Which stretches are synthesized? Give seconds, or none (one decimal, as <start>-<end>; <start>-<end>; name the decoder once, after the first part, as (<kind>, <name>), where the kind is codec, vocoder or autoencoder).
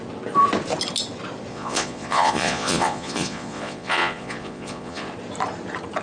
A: 1.5-5.1 (vocoder, Vocos)